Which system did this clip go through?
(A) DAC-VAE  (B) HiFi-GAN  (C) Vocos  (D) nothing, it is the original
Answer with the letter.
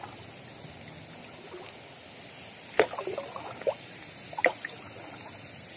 D